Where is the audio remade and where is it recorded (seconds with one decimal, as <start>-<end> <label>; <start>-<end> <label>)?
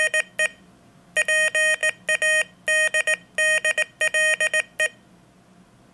0.0-5.9 recorded